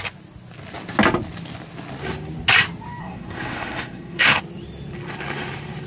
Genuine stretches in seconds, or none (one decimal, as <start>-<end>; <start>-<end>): 0.0-3.0; 4.4-5.9